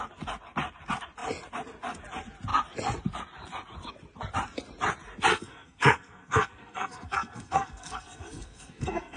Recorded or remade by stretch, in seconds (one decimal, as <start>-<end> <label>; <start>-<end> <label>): 0.0-5.3 recorded; 5.3-9.2 remade